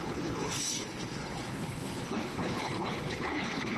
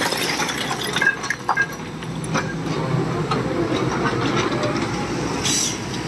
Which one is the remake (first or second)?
first